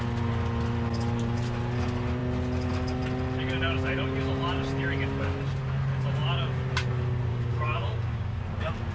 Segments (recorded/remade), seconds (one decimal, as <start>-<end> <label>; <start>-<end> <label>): 0.0-7.3 recorded; 7.3-8.4 remade; 8.4-8.9 recorded